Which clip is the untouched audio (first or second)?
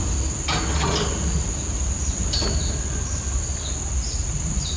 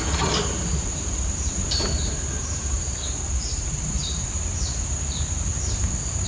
first